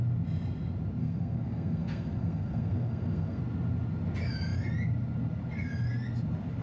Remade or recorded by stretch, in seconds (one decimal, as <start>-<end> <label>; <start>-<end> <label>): 0.0-1.0 recorded; 1.0-3.4 remade; 3.4-6.6 recorded